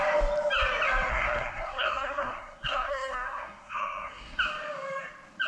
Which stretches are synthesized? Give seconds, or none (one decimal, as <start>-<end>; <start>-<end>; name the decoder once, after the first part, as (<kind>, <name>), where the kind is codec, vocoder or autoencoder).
1.1-4.4 (codec, SNAC)